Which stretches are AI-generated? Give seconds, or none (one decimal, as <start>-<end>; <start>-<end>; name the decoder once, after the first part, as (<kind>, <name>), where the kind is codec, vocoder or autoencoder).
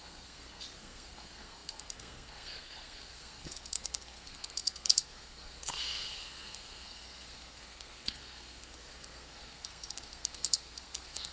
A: 0.0-11.3 (codec, SNAC)